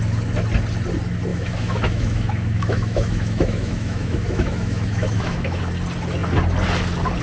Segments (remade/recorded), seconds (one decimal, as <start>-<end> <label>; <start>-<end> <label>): 0.0-1.3 recorded; 1.3-5.6 remade; 5.6-7.2 recorded